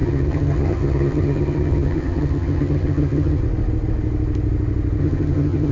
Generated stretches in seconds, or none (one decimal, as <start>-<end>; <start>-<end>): 0.0-3.4; 5.0-5.7